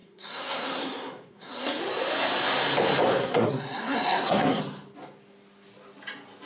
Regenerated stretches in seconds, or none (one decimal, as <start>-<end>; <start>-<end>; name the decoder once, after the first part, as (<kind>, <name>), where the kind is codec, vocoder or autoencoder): 0.0-1.8 (codec, SNAC); 3.2-4.6